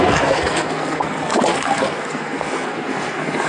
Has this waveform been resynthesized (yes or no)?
yes